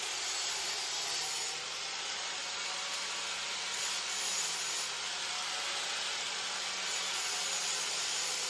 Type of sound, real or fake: real